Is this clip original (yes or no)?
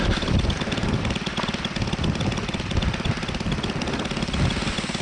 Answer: no